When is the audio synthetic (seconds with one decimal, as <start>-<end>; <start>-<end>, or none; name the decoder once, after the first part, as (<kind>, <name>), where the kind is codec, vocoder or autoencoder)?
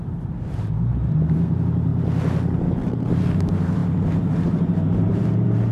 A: 0.0-1.9 (vocoder, BigVGAN v2); 2.9-5.7